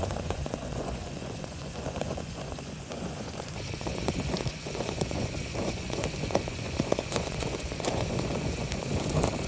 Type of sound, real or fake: fake